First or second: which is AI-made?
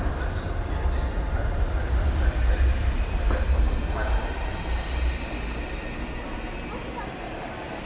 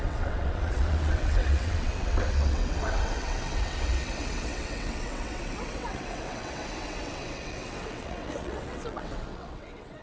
second